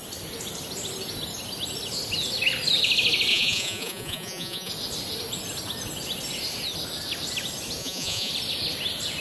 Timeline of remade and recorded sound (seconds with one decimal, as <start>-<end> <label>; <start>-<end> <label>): 0.0-3.3 recorded; 3.3-4.7 remade; 4.7-7.8 recorded; 7.8-8.3 remade; 8.3-9.2 recorded